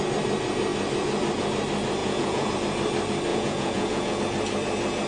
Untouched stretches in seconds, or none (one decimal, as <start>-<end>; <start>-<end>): 0.0-2.0; 2.5-3.3; 4.2-5.1